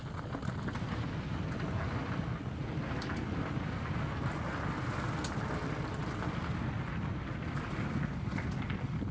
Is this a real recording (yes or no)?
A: yes